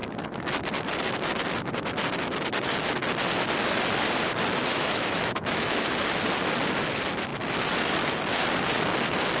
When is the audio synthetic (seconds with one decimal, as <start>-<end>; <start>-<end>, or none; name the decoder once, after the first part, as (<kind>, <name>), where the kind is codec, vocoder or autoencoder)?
4.7-5.8 (autoencoder, DAC-VAE)